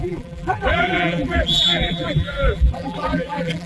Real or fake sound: fake